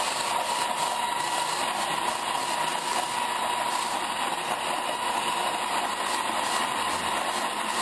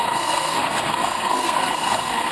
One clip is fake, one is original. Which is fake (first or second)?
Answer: second